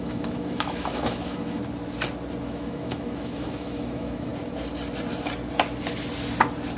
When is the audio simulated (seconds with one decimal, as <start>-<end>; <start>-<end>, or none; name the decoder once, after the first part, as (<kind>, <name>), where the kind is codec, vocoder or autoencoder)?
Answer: 0.0-1.6 (autoencoder, DAC-VAE); 2.4-4.3